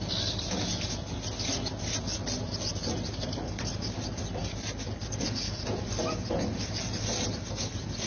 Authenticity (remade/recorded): recorded